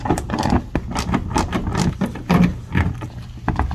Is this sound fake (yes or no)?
no